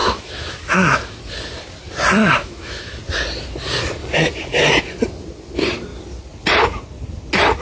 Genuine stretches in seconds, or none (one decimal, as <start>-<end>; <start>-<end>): 1.2-2.2; 3.0-7.6